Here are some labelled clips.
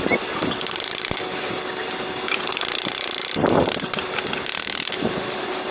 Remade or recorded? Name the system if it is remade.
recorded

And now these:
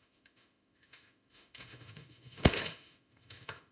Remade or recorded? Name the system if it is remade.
remade, autoencoder, DAC-VAE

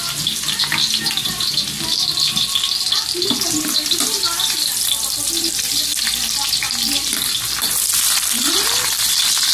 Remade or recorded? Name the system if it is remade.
remade, vocoder, BigVGAN v2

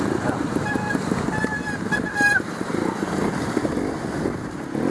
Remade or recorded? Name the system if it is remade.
recorded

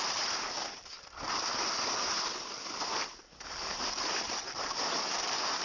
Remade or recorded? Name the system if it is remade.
recorded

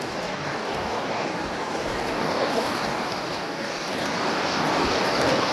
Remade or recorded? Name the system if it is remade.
remade, codec, DAC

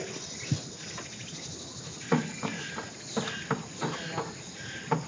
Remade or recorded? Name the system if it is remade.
recorded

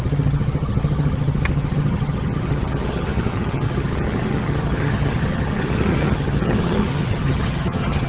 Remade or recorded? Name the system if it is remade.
remade, vocoder, HiFi-GAN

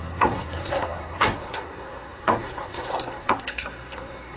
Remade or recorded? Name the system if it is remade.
remade, codec, SNAC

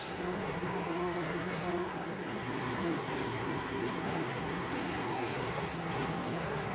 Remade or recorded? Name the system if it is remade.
remade, codec, SNAC